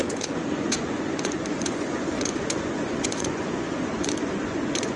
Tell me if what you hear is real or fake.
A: fake